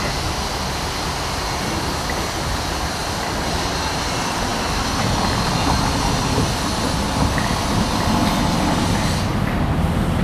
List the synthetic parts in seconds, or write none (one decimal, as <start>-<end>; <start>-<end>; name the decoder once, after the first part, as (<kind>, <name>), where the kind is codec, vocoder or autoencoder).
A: 3.0-3.6 (vocoder, BigVGAN v2)